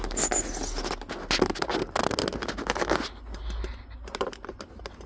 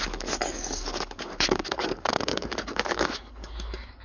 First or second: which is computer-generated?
second